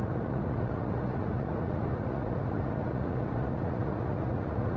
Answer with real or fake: fake